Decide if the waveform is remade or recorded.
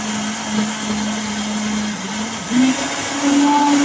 recorded